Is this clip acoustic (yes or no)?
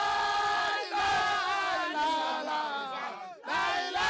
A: yes